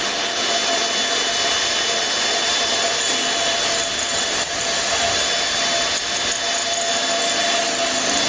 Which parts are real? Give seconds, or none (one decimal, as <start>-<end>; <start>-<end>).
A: 0.0-8.3